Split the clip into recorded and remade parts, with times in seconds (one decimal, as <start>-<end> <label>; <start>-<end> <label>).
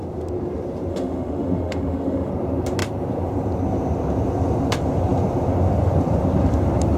0.0-0.9 recorded; 0.9-2.3 remade; 2.3-7.0 recorded